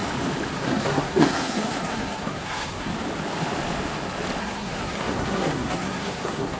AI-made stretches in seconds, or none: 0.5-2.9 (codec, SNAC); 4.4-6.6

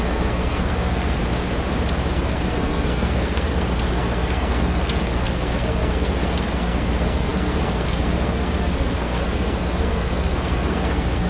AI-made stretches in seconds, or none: 0.0-1.2 (codec, SNAC); 2.1-11.3

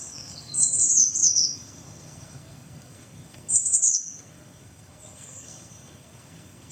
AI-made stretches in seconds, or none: 0.0-6.7 (codec, SNAC)

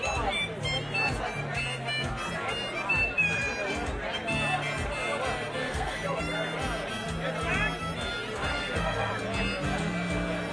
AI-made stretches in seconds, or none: 5.6-6.2 (codec, SNAC); 8.5-9.1

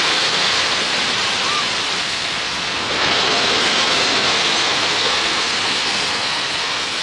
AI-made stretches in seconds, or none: 0.0-0.9 (codec, SNAC); 2.0-7.0